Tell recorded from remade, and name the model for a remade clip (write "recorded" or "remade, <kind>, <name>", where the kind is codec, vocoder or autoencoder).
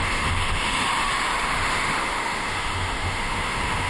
remade, autoencoder, DAC-VAE